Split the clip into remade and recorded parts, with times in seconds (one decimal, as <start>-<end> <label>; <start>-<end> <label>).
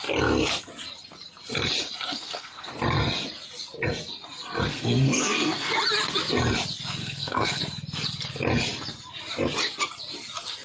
0.0-2.1 recorded; 2.1-2.7 remade; 2.7-4.7 recorded; 4.7-5.7 remade; 5.7-7.0 recorded; 7.0-7.6 remade; 7.6-10.6 recorded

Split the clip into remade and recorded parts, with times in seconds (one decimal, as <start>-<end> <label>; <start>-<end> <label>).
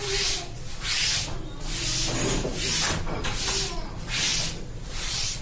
0.0-5.4 recorded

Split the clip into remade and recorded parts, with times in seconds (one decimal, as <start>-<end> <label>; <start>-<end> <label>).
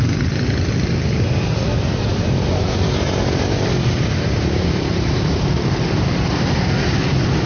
0.0-2.1 recorded; 2.1-6.2 remade; 6.2-7.5 recorded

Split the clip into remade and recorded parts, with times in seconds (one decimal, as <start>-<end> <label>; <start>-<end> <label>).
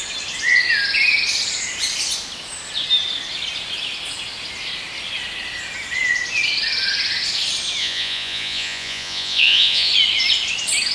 0.0-7.8 recorded; 7.8-9.9 remade; 9.9-10.9 recorded